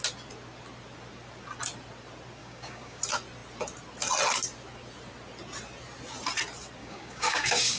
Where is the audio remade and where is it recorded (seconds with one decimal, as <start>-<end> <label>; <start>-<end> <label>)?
0.0-2.4 recorded; 2.4-3.0 remade; 3.0-6.8 recorded; 6.8-7.8 remade